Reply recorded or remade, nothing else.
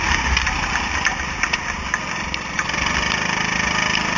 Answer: recorded